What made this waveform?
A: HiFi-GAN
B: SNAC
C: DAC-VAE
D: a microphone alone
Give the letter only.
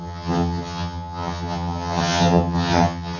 A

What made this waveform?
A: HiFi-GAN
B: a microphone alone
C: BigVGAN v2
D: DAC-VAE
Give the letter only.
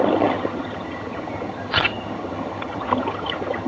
A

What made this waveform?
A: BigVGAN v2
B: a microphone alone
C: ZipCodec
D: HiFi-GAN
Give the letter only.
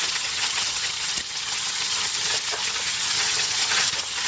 D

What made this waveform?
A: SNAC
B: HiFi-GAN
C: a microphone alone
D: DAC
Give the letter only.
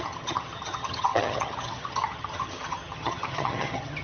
B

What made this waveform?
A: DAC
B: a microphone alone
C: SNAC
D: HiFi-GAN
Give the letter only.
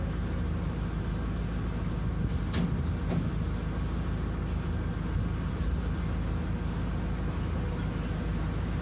B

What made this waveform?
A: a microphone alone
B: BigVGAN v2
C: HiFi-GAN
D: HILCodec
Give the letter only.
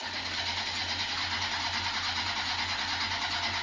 A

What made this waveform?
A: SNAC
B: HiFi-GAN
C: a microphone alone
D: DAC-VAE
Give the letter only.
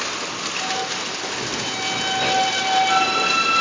C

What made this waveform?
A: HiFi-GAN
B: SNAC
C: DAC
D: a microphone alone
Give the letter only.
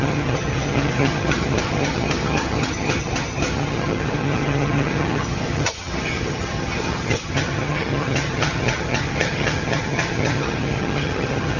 A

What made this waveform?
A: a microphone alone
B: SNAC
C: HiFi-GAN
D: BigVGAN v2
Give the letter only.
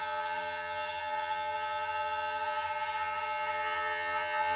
C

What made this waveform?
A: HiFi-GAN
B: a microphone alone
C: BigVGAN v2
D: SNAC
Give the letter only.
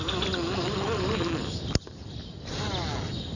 B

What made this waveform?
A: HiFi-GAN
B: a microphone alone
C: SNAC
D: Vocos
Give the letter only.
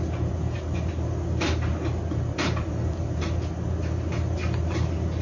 B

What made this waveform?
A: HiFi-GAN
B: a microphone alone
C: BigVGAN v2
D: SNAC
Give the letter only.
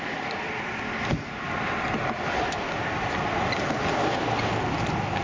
B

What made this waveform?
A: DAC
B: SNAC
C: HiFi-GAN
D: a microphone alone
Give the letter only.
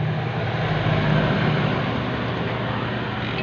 D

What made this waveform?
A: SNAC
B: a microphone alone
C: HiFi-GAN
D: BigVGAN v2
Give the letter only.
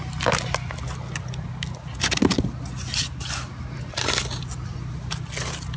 B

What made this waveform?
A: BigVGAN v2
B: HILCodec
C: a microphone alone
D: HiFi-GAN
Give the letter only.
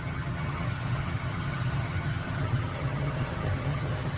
D